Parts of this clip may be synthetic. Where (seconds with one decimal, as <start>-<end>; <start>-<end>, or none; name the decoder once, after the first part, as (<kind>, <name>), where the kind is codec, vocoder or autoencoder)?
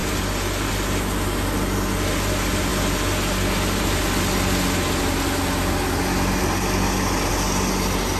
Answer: none